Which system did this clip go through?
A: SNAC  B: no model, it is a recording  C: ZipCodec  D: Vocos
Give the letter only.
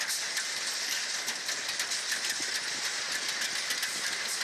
B